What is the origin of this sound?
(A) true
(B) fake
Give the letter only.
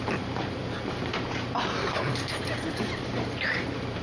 B